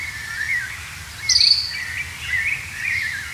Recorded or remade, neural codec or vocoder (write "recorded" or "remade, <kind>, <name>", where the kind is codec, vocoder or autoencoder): recorded